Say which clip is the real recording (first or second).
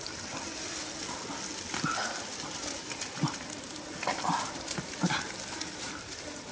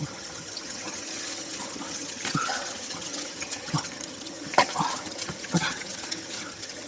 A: first